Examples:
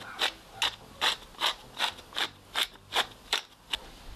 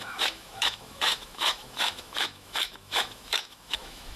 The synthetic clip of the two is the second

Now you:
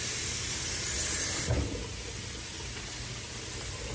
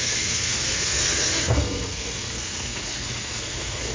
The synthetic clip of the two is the second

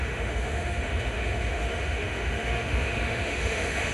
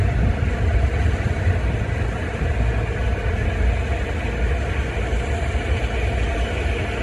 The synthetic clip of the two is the first